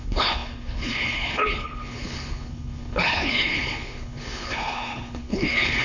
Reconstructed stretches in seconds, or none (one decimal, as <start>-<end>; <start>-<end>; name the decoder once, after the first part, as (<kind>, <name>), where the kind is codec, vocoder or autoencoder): 0.0-5.8 (codec, HILCodec)